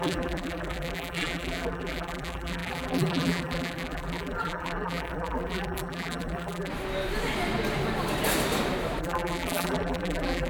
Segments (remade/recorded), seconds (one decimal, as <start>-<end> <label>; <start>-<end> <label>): 0.0-6.7 remade; 6.7-9.0 recorded; 9.0-10.5 remade